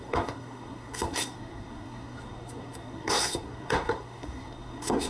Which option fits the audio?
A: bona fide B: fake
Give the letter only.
B